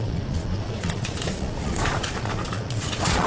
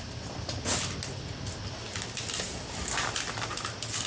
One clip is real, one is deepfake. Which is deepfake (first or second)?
first